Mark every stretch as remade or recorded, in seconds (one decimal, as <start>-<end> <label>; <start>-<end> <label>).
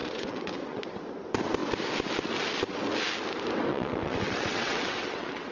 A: 0.0-0.8 remade; 0.8-3.7 recorded; 3.7-5.5 remade